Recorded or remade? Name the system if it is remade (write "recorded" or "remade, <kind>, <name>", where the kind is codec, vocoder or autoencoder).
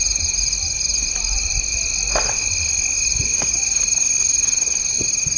recorded